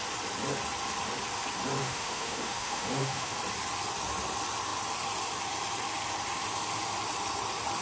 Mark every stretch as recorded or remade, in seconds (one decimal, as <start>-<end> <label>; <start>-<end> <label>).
0.0-1.8 recorded; 1.8-3.4 remade; 3.4-7.8 recorded

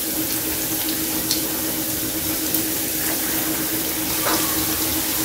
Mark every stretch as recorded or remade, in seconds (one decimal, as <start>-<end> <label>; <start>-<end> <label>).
0.0-5.2 recorded

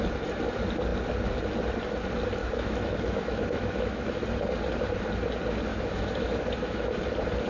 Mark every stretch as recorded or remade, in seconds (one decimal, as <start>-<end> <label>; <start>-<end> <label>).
0.0-2.4 recorded; 2.4-4.1 remade; 4.1-5.7 recorded; 5.7-7.0 remade; 7.0-7.5 recorded

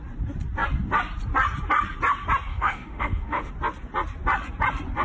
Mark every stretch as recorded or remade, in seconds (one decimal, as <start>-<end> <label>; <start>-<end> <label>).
0.0-2.5 recorded; 2.5-3.5 remade; 3.5-5.0 recorded

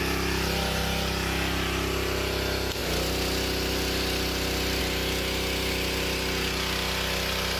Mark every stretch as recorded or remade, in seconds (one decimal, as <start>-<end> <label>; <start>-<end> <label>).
0.0-7.6 recorded